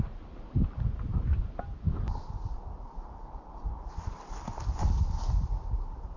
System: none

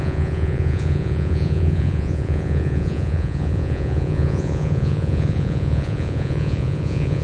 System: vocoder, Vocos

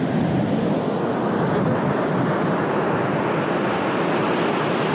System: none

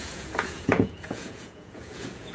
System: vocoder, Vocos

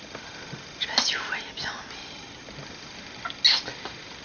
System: none